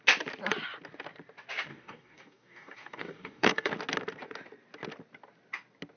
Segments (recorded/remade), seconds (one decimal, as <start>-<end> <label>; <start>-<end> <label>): 0.0-1.7 recorded; 1.7-3.7 remade; 3.7-6.0 recorded